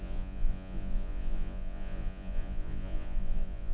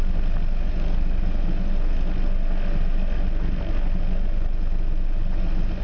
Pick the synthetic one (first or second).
first